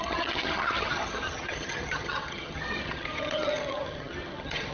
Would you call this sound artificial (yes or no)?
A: yes